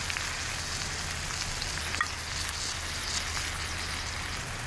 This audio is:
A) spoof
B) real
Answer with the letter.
B